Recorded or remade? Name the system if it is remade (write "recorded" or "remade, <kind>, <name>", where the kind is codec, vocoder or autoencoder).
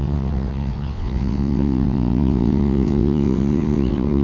remade, vocoder, WaveNeXt